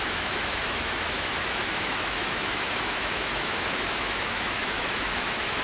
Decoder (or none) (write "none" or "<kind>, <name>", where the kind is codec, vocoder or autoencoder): autoencoder, DAC-VAE